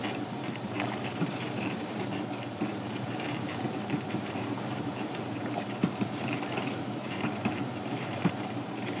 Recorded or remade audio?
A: remade